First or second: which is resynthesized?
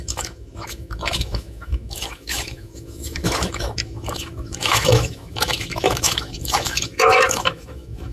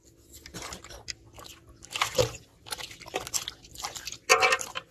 first